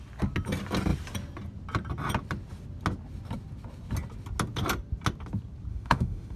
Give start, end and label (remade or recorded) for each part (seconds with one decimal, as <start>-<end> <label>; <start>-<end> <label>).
0.0-5.7 recorded; 5.7-6.4 remade